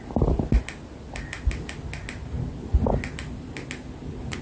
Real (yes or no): yes